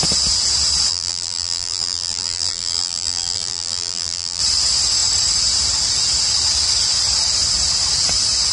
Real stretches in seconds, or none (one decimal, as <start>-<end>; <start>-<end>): 0.0-0.9; 4.4-8.5